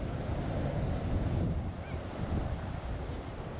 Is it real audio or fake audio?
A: real